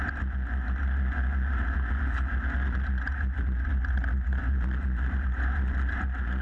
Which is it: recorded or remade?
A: recorded